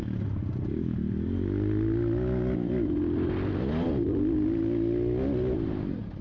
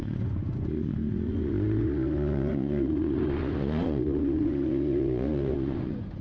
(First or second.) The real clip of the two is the first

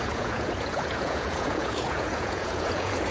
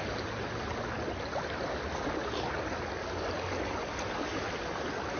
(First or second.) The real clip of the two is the second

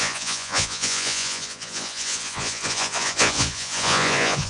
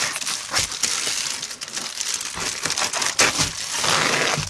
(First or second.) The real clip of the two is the second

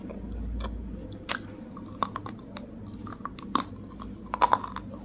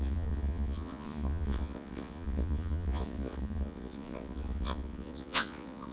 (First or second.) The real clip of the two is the first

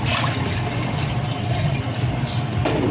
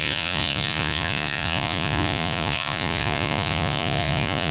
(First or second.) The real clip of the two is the first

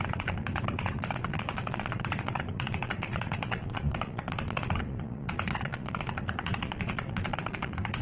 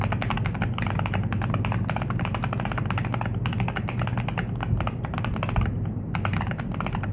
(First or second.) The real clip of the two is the second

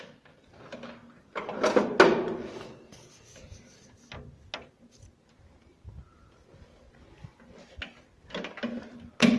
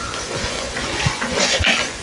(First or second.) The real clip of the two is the first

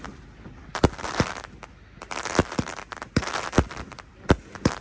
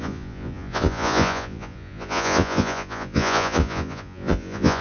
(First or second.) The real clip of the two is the first